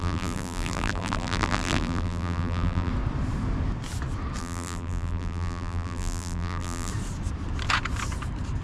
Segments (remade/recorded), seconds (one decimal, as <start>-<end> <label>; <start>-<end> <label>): 0.0-2.9 remade; 2.9-4.4 recorded; 4.4-6.9 remade; 6.9-8.6 recorded